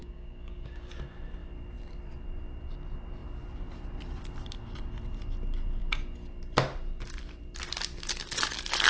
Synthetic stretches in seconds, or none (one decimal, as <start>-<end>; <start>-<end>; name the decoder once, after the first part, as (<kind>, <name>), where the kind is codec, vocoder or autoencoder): 0.0-0.9 (codec, DAC)

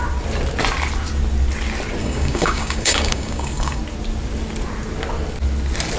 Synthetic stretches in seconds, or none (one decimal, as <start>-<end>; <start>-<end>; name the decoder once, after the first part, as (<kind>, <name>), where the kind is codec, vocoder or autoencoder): 2.0-3.8 (codec, DAC)